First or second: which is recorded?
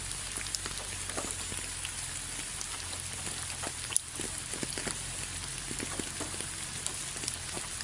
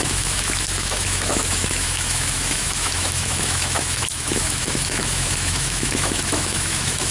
first